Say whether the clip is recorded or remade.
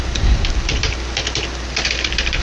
remade